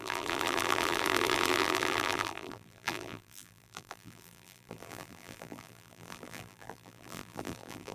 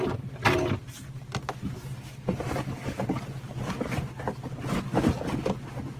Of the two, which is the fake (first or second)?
first